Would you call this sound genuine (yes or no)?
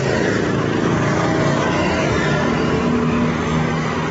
yes